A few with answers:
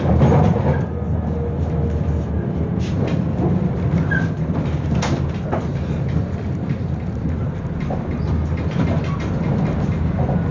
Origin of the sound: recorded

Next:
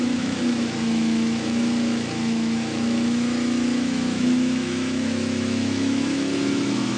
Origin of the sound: remade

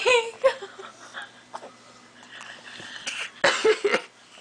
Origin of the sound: recorded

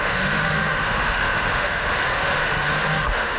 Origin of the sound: remade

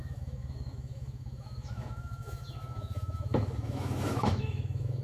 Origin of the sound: remade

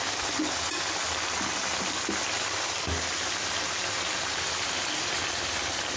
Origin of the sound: recorded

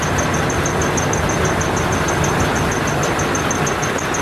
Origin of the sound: recorded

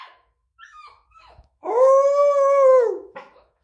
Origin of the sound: remade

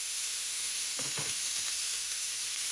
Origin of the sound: remade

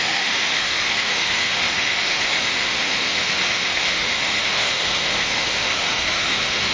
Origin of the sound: remade